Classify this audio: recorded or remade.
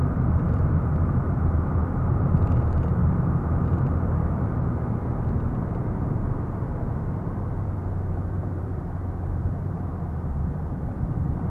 remade